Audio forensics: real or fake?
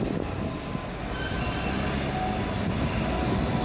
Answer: real